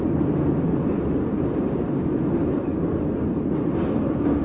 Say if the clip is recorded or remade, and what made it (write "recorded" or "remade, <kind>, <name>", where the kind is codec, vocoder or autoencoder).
recorded